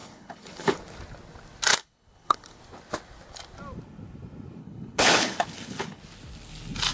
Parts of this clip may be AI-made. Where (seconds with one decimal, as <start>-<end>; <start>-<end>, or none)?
0.0-0.8; 1.7-2.6; 4.6-6.0